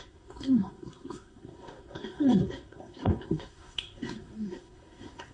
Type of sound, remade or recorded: remade